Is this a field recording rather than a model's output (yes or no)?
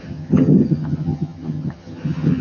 no